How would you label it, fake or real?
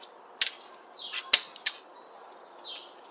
real